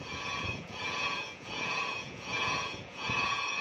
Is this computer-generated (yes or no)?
yes